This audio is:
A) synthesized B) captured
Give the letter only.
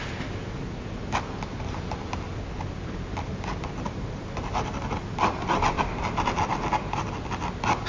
B